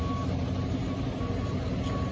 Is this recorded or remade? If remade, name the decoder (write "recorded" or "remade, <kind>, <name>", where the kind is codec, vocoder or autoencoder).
recorded